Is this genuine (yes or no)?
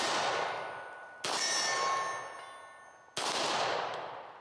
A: yes